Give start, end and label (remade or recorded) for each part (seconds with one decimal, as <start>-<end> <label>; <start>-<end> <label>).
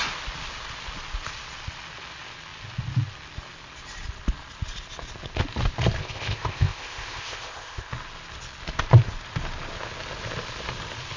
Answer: 0.0-6.0 recorded; 6.0-7.9 remade; 7.9-11.2 recorded